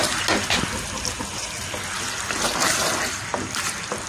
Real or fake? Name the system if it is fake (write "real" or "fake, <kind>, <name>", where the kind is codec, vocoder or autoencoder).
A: real